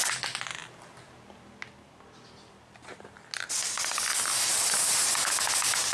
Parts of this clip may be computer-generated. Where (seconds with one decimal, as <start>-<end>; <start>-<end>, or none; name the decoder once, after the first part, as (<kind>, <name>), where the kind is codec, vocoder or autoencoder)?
none